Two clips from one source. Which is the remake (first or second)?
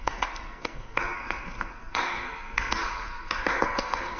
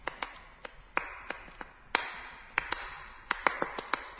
first